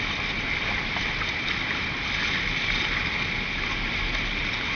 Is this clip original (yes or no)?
yes